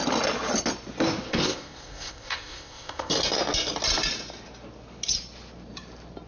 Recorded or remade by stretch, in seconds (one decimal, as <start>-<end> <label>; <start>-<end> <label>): 0.0-1.3 recorded; 1.3-3.1 remade; 3.1-6.3 recorded